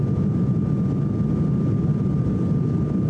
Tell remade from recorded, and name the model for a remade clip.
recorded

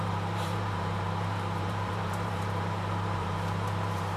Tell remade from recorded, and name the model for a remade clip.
remade, vocoder, BigVGAN v2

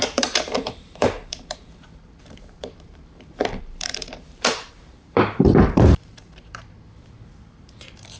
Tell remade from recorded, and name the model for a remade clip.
remade, vocoder, BigVGAN v2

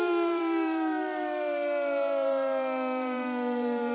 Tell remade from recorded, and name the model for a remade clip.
remade, vocoder, BigVGAN v2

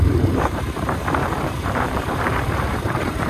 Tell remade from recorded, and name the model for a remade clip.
remade, vocoder, BigVGAN v2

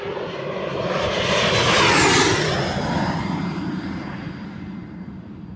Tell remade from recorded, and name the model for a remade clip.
recorded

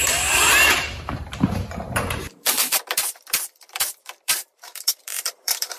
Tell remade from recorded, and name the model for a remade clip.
remade, vocoder, BigVGAN v2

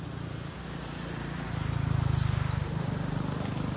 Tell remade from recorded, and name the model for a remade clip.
recorded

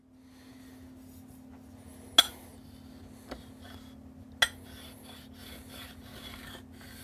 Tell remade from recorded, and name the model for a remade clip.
recorded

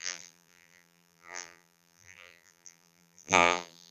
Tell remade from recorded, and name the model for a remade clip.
remade, vocoder, BigVGAN v2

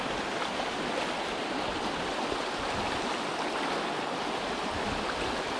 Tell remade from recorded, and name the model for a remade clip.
recorded